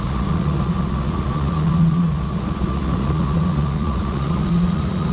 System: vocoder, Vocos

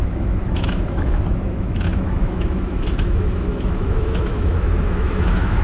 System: autoencoder, DAC-VAE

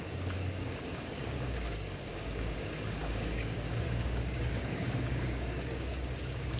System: codec, DAC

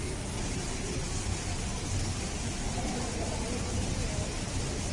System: none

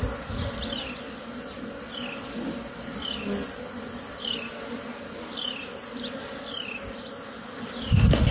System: none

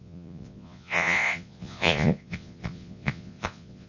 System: vocoder, Vocos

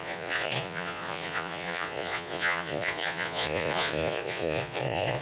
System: vocoder, Vocos